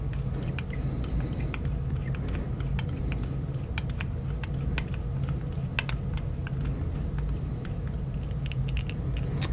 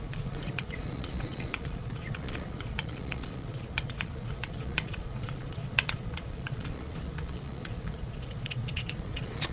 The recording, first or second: first